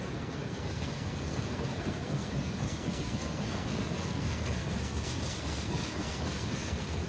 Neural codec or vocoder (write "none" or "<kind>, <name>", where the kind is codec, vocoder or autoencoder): codec, SNAC